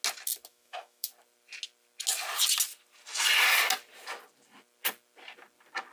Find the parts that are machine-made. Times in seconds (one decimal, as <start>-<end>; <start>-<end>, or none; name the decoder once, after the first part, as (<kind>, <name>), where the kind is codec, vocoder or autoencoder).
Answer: 0.5-1.1 (autoencoder, DAC-VAE)